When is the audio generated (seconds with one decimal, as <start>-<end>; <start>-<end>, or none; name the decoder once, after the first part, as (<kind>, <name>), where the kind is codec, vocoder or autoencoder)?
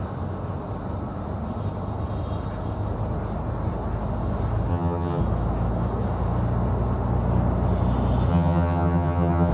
4.7-5.2 (vocoder, HiFi-GAN); 8.3-9.5